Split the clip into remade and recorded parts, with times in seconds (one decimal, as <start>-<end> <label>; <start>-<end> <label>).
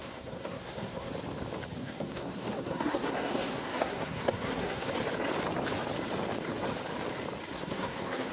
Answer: 0.0-1.1 remade; 1.1-1.8 recorded; 1.8-4.9 remade; 4.9-7.5 recorded; 7.5-8.3 remade